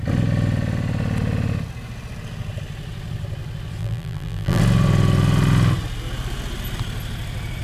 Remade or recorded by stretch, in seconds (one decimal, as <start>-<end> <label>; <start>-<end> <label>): 0.0-3.8 recorded; 3.8-4.6 remade; 4.6-7.6 recorded